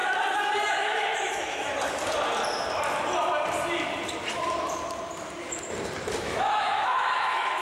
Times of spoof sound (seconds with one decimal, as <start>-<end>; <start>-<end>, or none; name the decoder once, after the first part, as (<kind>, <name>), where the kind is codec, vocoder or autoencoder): 0.7-1.7 (autoencoder, DAC-VAE); 6.2-7.6